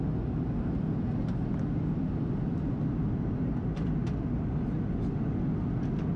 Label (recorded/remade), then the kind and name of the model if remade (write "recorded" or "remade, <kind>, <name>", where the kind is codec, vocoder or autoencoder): recorded